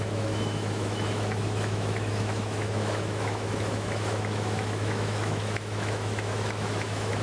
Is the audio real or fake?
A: fake